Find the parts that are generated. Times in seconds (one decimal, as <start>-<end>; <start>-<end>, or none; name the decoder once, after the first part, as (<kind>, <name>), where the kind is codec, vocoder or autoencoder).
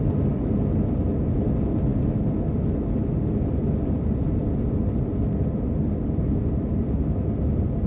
none